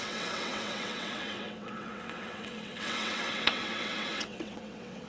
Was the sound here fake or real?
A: fake